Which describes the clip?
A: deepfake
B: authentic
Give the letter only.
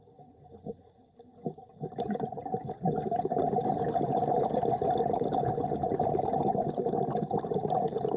B